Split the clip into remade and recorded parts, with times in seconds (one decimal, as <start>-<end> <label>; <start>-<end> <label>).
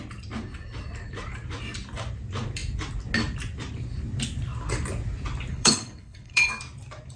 0.0-5.5 recorded; 5.5-6.5 remade; 6.5-7.2 recorded